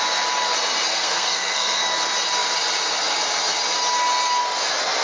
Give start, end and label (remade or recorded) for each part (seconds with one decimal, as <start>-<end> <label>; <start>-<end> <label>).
0.0-0.9 recorded; 0.9-1.8 remade; 1.8-5.0 recorded